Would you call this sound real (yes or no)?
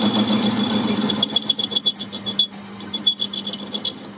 yes